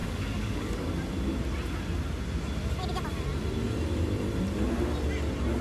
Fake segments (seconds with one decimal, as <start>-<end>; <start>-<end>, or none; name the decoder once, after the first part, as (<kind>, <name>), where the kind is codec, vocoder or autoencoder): 0.0-0.9 (codec, DAC)